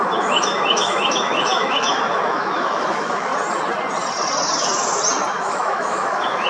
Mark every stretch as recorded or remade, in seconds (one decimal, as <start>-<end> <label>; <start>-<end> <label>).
0.0-3.3 remade; 3.3-5.3 recorded; 5.3-6.5 remade

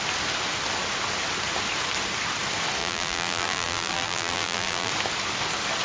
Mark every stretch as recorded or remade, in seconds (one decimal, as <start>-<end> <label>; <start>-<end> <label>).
0.0-2.8 recorded; 2.8-4.9 remade; 4.9-5.8 recorded

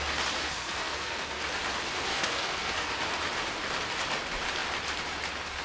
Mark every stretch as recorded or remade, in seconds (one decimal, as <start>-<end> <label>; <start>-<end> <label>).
0.0-0.4 recorded; 0.4-1.4 remade; 1.4-2.1 recorded; 2.1-2.9 remade; 2.9-5.6 recorded

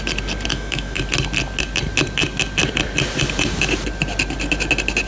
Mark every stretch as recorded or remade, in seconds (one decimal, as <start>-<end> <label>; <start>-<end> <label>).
0.0-0.5 recorded; 0.5-1.0 remade; 1.0-5.1 recorded

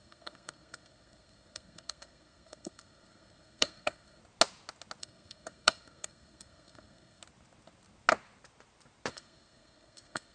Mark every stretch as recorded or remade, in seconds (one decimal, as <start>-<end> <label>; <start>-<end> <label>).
0.0-4.2 remade; 4.2-5.0 recorded; 5.0-7.2 remade; 7.2-9.1 recorded; 9.1-10.3 remade

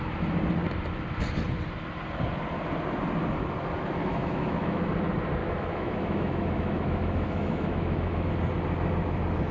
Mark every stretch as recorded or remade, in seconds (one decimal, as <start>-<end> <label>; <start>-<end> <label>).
0.0-4.1 recorded; 4.1-4.9 remade; 4.9-5.4 recorded; 5.4-8.3 remade; 8.3-9.5 recorded